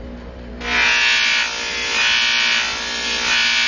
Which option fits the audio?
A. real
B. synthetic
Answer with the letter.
A